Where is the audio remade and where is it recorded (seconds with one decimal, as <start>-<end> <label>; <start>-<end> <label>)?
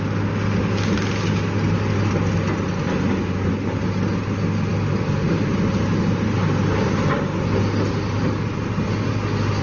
0.0-9.6 recorded